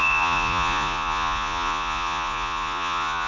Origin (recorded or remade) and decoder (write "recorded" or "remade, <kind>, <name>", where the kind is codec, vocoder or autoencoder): remade, vocoder, Vocos